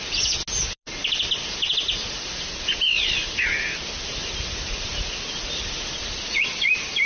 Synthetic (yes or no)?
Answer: no